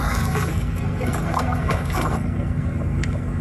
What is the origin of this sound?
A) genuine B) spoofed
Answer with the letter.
B